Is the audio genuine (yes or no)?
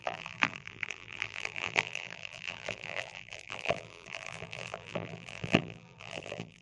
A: no